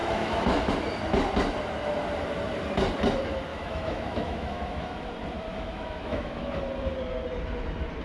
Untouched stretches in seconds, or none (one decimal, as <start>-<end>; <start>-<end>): 0.7-3.5; 5.1-5.5; 6.6-8.0